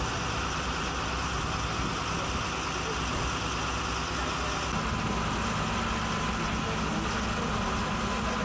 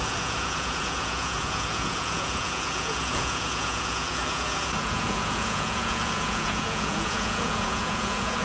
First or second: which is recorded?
first